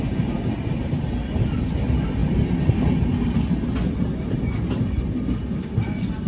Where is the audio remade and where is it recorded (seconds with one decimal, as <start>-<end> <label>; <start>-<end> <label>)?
0.0-6.3 recorded